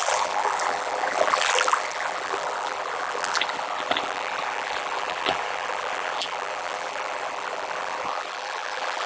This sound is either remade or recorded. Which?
remade